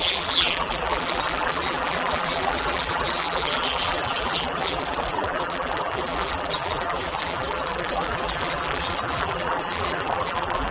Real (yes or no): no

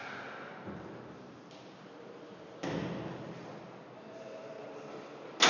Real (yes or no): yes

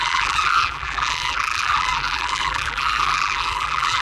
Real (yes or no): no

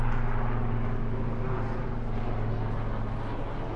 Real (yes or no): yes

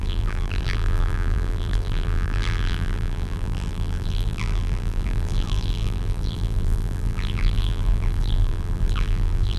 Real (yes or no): no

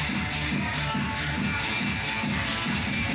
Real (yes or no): no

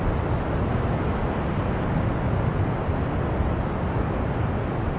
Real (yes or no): yes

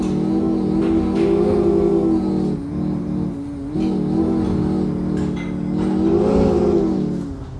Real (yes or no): yes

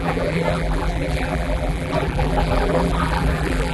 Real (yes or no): no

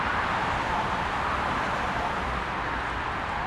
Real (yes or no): no